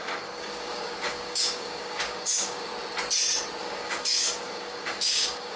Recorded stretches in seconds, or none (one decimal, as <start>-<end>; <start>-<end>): 2.7-3.6